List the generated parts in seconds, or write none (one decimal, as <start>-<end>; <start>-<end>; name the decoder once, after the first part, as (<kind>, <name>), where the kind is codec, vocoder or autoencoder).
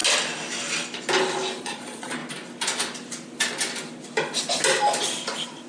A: 1.6-2.2 (vocoder, Vocos)